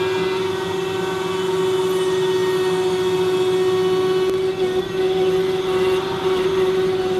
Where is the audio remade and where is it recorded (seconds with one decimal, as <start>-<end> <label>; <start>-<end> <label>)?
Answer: 0.0-7.2 recorded